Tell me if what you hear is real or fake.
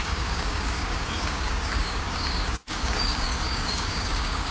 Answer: fake